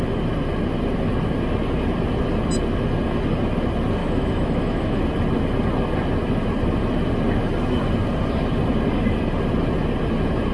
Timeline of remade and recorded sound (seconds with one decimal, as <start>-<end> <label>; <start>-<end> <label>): 0.0-4.0 recorded; 4.0-5.0 remade; 5.0-10.5 recorded